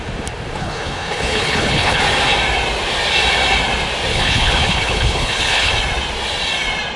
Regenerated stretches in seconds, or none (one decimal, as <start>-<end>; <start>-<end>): 0.6-2.0; 4.1-5.7